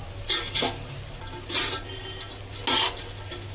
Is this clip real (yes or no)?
yes